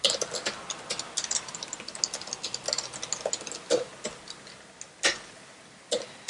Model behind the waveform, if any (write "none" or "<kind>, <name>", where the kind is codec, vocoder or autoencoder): none